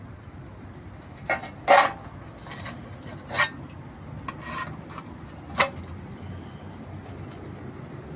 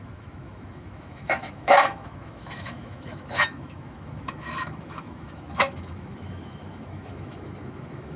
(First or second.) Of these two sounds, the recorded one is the first